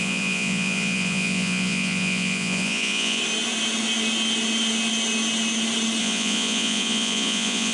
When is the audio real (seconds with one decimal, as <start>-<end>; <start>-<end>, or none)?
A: 3.2-6.0